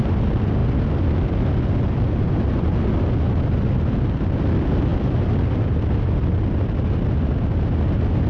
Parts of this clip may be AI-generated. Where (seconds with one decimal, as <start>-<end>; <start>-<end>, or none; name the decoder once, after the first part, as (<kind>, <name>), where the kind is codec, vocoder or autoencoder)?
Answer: none